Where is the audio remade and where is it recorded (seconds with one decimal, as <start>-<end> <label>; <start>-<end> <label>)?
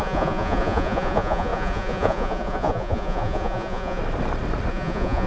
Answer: 0.0-4.0 remade; 4.0-4.7 recorded; 4.7-5.3 remade